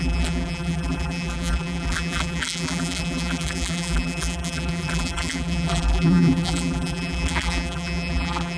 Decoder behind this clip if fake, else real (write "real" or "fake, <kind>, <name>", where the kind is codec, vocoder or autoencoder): fake, vocoder, BigVGAN v2